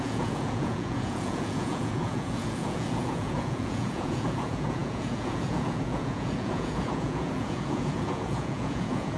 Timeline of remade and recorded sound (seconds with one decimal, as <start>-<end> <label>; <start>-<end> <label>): 0.0-9.2 remade